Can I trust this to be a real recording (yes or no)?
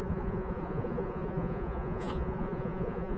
no